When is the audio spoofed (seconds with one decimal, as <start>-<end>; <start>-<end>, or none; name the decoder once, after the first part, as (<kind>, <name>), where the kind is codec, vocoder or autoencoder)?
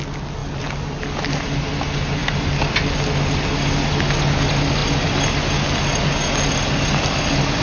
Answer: 0.4-1.0 (vocoder, BigVGAN v2)